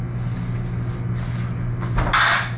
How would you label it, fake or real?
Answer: real